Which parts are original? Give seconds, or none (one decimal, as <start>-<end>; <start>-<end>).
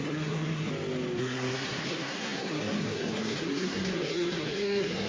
0.7-1.2